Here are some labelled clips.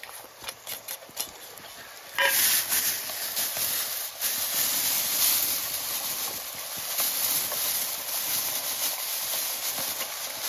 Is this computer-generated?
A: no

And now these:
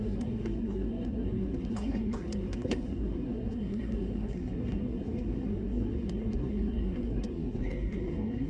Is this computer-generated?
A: yes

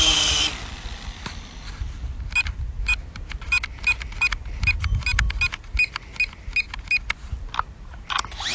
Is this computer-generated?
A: no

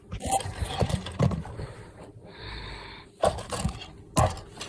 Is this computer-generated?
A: no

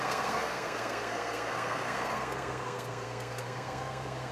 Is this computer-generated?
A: yes